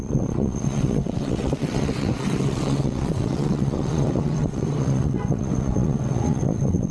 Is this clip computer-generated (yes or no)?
yes